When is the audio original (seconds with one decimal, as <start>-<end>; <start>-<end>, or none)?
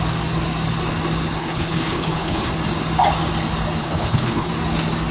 0.0-1.4; 2.5-3.8; 4.5-5.1